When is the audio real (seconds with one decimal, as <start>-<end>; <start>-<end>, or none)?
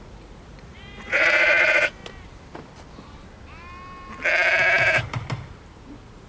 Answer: 2.0-5.8